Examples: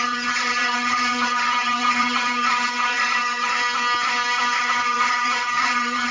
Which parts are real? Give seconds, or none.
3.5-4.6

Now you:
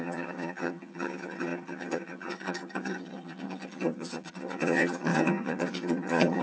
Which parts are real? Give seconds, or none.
none

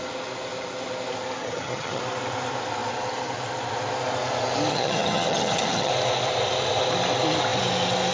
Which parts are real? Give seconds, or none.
0.0-1.4; 2.0-4.7; 5.9-8.1

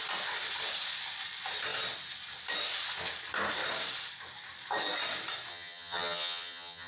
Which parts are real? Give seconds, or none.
0.0-5.5

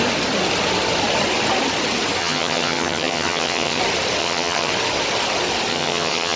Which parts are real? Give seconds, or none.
0.0-2.2; 3.8-4.2; 4.7-5.7

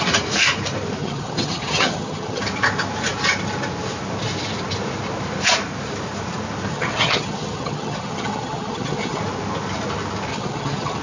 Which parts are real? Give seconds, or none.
0.0-1.0; 2.4-6.7; 9.2-10.3

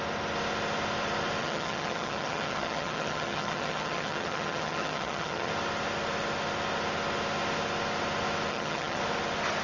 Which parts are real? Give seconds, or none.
0.0-1.4; 5.5-8.5; 9.0-9.6

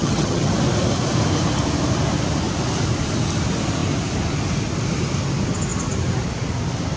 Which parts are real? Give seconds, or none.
0.5-7.0